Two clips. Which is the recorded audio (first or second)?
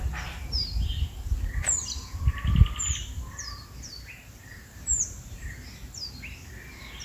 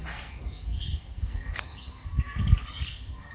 first